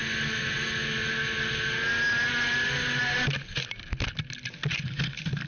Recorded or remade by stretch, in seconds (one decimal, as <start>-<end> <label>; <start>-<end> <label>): 0.0-5.5 recorded